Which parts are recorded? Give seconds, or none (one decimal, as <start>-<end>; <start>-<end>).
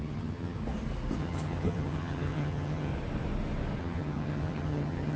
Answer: 0.6-1.2; 2.9-3.8